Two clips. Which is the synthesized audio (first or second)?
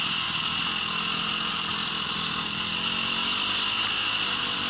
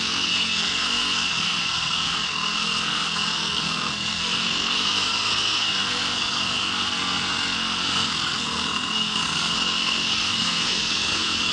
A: second